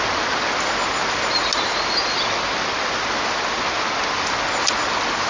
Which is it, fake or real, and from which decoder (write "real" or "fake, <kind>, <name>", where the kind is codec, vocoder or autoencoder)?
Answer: real